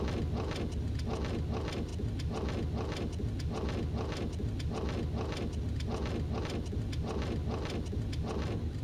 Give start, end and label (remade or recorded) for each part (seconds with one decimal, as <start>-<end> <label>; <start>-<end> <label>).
0.0-8.8 recorded